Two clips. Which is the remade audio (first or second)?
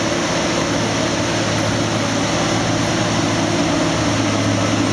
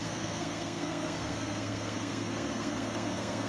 second